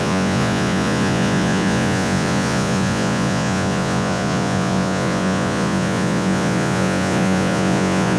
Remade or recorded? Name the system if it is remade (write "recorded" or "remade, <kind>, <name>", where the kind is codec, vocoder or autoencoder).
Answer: remade, vocoder, Vocos